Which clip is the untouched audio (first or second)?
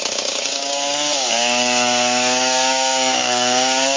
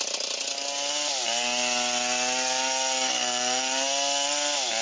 second